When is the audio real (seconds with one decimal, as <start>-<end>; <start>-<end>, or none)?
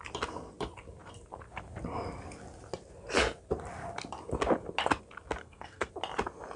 0.0-5.4; 5.9-6.6